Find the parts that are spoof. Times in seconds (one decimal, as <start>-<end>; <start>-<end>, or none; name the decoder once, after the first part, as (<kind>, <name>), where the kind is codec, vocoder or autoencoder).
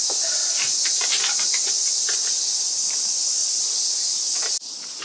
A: none